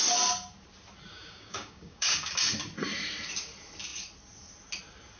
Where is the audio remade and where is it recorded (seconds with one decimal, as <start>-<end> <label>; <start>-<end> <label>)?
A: 0.0-1.1 recorded; 1.1-2.3 remade; 2.3-5.2 recorded

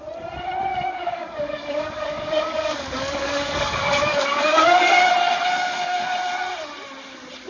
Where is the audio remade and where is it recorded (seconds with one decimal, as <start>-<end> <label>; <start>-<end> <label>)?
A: 0.0-0.7 recorded; 0.7-5.1 remade; 5.1-5.5 recorded; 5.5-6.1 remade; 6.1-7.5 recorded